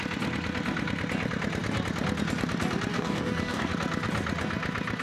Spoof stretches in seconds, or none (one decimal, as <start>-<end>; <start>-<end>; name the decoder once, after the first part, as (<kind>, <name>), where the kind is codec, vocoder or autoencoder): 2.9-3.7 (codec, DAC)